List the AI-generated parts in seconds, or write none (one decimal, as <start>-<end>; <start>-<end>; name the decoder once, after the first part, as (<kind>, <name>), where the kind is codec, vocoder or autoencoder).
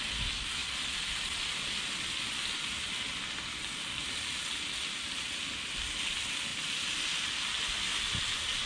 none